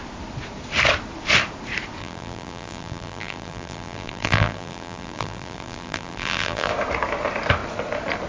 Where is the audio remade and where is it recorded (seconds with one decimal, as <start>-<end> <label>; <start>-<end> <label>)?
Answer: 0.0-2.0 recorded; 2.0-6.7 remade; 6.7-8.3 recorded

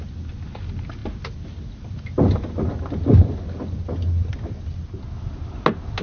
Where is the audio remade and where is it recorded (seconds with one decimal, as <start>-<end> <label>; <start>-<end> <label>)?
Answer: 0.0-6.0 recorded

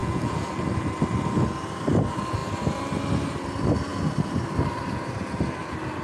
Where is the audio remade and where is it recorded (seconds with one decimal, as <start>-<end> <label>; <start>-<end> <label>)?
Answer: 0.0-0.5 remade; 0.5-6.0 recorded

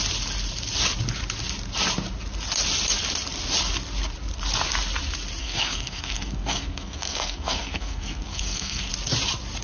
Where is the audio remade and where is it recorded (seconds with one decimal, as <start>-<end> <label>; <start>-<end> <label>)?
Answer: 0.0-5.4 recorded; 5.4-8.9 remade; 8.9-9.6 recorded

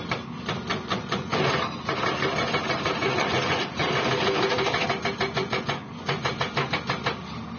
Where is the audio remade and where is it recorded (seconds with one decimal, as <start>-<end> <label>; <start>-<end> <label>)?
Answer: 0.0-0.7 recorded; 0.7-1.4 remade; 1.4-3.0 recorded; 3.0-3.6 remade; 3.6-5.3 recorded; 5.3-6.3 remade; 6.3-7.6 recorded

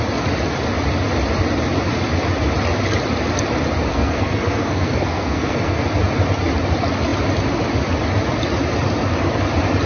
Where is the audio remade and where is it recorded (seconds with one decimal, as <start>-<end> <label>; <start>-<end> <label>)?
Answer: 0.0-3.9 recorded; 3.9-5.8 remade; 5.8-9.9 recorded

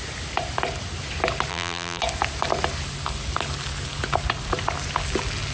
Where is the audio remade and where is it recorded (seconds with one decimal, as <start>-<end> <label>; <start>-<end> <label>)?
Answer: 0.0-1.5 recorded; 1.5-2.0 remade; 2.0-5.5 recorded